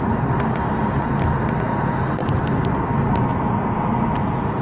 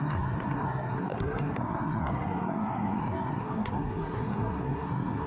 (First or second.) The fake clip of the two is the second